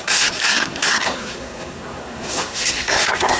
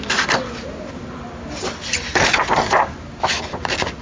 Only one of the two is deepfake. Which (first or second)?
first